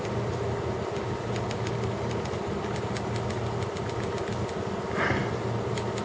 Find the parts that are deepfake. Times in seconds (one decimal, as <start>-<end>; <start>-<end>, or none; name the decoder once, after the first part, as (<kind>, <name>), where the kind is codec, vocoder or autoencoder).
none